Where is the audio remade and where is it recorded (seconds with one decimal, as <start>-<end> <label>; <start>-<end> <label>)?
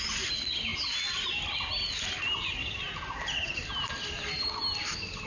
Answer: 0.0-5.3 recorded